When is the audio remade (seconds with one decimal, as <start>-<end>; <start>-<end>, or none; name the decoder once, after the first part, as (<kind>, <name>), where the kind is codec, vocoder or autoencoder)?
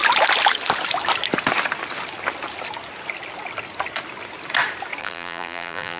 5.0-6.0 (vocoder, BigVGAN v2)